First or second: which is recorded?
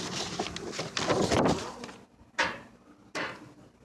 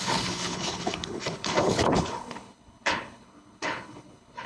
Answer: first